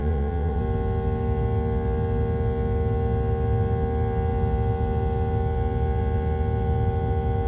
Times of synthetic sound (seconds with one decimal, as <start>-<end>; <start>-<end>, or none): 0.0-0.6